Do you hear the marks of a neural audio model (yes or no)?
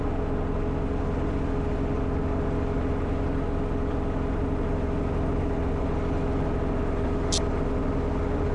no